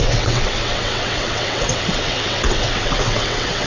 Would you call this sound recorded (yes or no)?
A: no